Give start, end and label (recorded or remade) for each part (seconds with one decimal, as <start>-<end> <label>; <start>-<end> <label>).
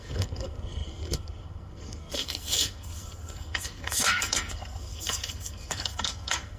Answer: 0.0-6.6 remade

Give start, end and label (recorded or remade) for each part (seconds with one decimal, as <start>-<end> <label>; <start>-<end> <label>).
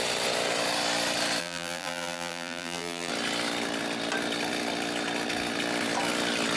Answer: 0.0-1.4 recorded; 1.4-3.1 remade; 3.1-6.6 recorded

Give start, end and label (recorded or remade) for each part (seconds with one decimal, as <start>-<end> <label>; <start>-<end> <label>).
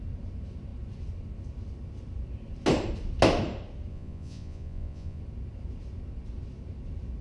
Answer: 0.0-3.9 recorded; 3.9-5.2 remade; 5.2-7.2 recorded